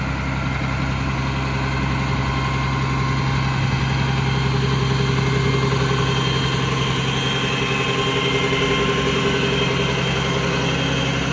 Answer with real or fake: real